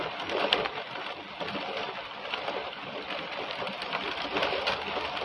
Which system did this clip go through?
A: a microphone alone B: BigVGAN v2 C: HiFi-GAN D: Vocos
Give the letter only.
B